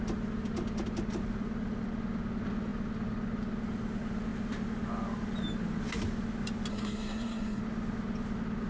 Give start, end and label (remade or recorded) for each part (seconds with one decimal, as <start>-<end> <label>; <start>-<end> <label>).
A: 0.0-6.7 recorded; 6.7-7.6 remade; 7.6-8.7 recorded

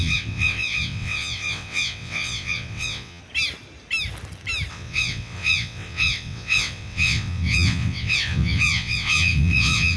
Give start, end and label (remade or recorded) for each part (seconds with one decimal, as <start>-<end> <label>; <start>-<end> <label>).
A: 0.0-3.2 remade; 3.2-4.7 recorded; 4.7-10.0 remade

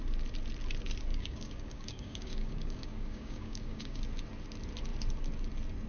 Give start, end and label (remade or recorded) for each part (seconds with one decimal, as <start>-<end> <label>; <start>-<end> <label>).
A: 0.0-1.1 recorded; 1.1-4.0 remade; 4.0-5.9 recorded